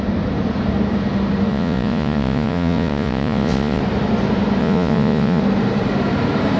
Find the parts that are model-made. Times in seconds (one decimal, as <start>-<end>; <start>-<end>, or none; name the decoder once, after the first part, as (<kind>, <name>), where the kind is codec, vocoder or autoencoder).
1.5-3.8 (vocoder, Vocos); 4.6-5.4